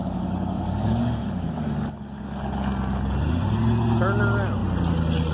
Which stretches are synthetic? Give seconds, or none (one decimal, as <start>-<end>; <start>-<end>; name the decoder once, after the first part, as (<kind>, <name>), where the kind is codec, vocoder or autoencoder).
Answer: 0.0-2.2 (codec, DAC)